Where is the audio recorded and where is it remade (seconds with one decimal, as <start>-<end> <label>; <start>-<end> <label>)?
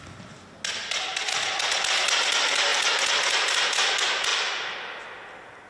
0.0-5.7 recorded